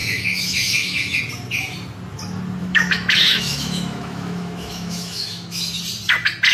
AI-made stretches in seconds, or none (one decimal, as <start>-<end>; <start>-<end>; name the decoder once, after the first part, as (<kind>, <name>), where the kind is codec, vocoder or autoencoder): 0.0-1.2 (autoencoder, DAC-VAE); 2.6-5.8

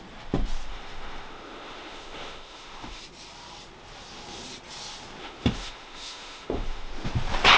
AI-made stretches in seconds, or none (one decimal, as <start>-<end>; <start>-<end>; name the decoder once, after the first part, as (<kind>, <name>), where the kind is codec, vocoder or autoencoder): 0.7-3.0 (autoencoder, DAC-VAE); 5.2-6.9

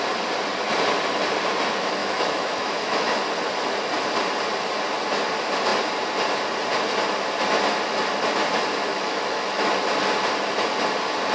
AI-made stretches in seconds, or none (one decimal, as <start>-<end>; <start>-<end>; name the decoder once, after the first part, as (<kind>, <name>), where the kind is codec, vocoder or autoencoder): 2.0-3.2 (autoencoder, DAC-VAE); 8.9-9.7

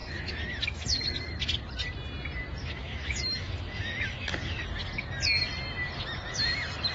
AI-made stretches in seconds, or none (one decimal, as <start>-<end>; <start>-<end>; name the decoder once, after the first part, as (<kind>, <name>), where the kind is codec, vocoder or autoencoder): 2.6-4.6 (autoencoder, DAC-VAE)

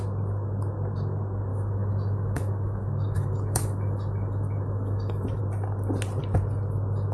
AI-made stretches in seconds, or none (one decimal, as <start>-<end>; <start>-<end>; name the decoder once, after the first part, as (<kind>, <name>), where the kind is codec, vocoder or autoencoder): 1.5-5.4 (autoencoder, DAC-VAE)

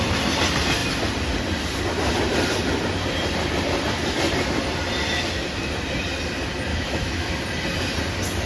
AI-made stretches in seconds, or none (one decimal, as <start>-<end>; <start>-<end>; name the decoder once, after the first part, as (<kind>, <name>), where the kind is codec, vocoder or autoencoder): 6.7-7.3 (autoencoder, DAC-VAE)